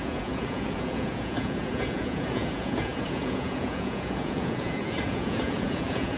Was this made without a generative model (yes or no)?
no